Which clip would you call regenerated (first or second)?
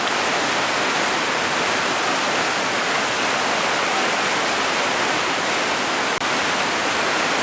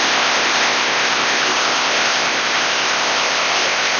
second